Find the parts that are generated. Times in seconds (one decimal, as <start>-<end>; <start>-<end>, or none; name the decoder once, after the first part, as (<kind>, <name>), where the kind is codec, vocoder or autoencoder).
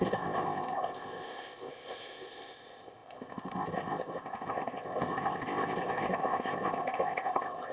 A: 0.0-7.7 (codec, ZipCodec)